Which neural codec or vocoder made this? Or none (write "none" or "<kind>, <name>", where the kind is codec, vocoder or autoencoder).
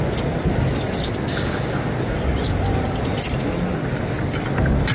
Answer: none